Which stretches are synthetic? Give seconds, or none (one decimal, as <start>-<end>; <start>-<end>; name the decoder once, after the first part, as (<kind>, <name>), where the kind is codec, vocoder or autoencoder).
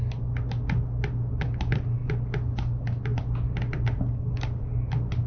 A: none